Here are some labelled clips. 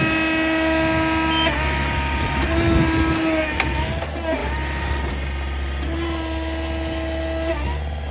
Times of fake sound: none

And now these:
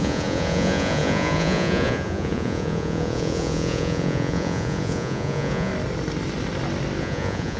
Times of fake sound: 0.0-5.7 (vocoder, Vocos); 7.0-7.6

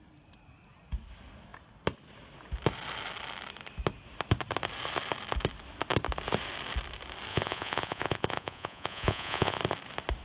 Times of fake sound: 7.3-9.6 (vocoder, Vocos)

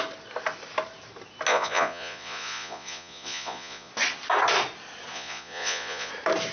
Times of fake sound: 1.5-3.9 (vocoder, Vocos); 5.1-6.1

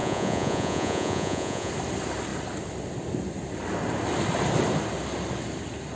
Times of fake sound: 0.0-1.7 (vocoder, Vocos)

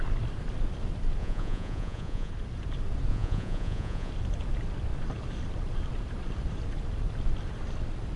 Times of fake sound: 1.2-2.3 (vocoder, Vocos); 3.1-4.1